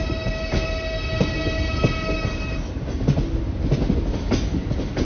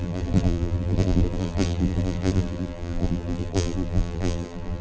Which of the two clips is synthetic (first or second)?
second